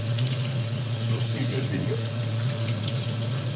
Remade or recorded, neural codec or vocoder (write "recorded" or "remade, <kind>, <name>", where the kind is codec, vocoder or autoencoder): remade, vocoder, Vocos